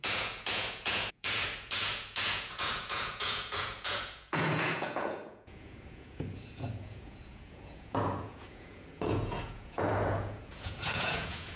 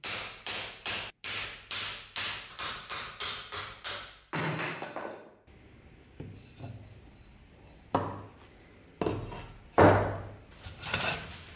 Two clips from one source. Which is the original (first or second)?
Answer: second